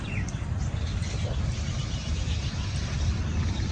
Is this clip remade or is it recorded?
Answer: remade